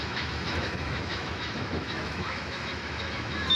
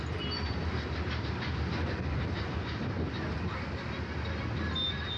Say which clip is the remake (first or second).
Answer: first